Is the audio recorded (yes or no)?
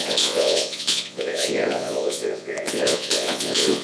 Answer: no